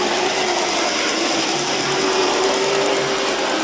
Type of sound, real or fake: real